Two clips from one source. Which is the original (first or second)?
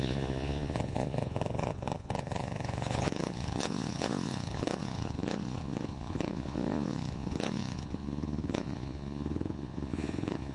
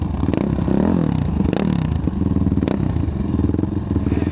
second